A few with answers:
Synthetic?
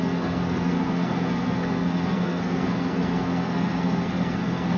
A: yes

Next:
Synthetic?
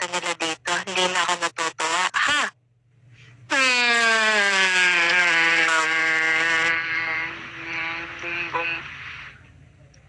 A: no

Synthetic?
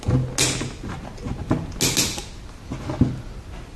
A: no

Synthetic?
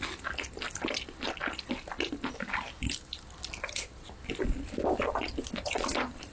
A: no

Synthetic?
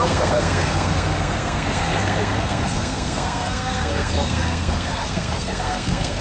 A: yes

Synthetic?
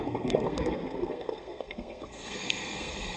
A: yes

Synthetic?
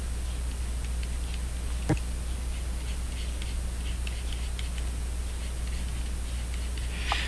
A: no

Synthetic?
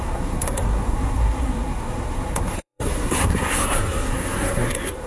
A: yes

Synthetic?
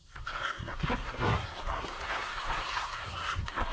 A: yes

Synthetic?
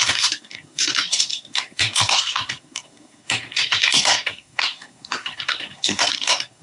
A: yes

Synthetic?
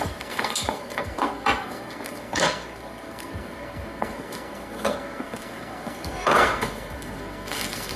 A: yes